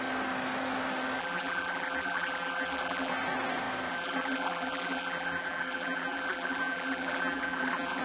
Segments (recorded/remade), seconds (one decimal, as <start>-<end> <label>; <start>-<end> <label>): 0.0-1.2 recorded; 1.2-3.1 remade; 3.1-3.9 recorded; 3.9-8.0 remade